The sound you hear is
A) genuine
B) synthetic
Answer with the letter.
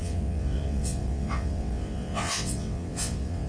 B